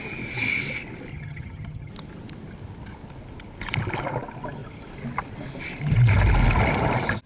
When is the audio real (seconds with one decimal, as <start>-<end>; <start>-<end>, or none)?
0.0-1.1; 1.9-7.3

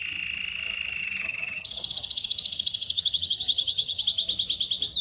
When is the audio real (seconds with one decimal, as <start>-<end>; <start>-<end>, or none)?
0.0-1.0; 4.0-5.0